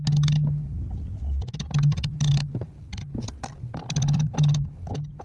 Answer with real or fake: real